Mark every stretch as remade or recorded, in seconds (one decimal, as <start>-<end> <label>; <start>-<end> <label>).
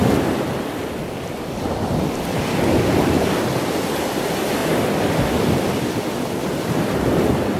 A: 0.0-7.6 recorded